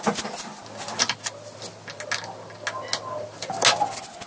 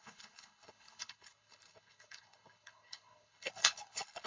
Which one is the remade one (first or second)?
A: second